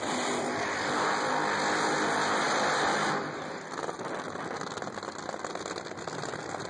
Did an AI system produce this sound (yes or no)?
no